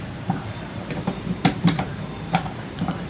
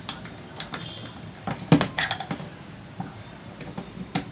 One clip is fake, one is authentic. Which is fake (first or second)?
first